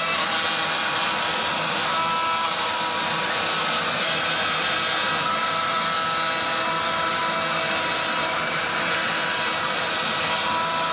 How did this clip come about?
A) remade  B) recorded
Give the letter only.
B